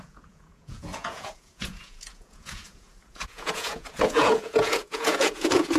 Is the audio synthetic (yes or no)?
yes